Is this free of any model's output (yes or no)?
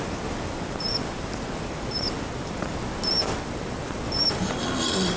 yes